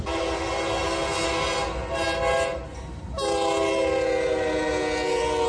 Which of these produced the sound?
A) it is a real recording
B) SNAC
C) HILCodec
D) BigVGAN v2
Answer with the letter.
A